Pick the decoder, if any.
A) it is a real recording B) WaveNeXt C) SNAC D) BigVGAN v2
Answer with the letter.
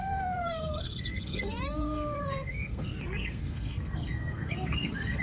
C